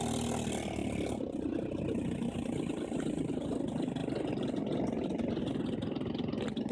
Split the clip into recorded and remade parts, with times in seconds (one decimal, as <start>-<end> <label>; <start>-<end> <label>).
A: 0.0-6.7 recorded